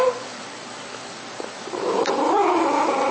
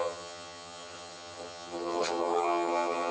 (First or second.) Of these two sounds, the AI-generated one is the second